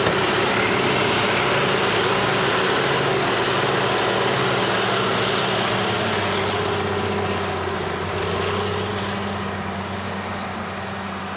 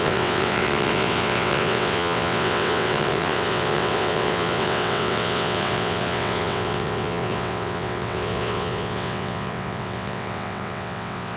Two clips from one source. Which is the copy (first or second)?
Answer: second